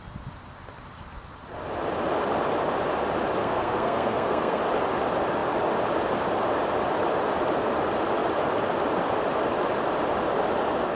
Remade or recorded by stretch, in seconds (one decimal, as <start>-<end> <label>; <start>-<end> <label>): 0.0-3.4 recorded; 3.4-4.6 remade; 4.6-10.9 recorded